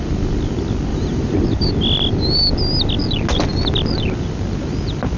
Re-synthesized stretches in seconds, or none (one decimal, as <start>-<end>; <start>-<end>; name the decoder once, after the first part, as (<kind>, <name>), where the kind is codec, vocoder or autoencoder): 0.9-1.7 (vocoder, BigVGAN v2)

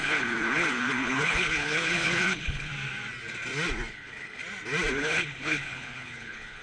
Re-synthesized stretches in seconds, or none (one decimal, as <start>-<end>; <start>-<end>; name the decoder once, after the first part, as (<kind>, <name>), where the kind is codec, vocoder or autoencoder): 0.0-2.7 (codec, HILCodec); 3.9-4.4; 4.9-6.6

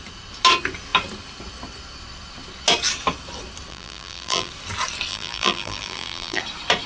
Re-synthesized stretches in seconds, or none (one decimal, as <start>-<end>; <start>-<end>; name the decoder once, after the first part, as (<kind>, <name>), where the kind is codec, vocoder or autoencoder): 3.7-4.5 (vocoder, BigVGAN v2); 5.1-6.4